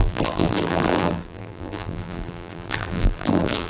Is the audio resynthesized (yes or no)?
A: yes